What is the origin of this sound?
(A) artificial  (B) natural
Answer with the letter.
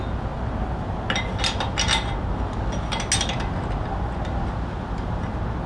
B